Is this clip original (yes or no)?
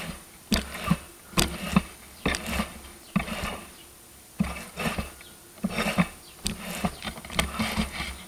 yes